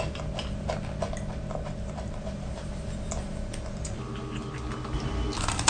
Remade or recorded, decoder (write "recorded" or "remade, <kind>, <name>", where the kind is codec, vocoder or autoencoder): recorded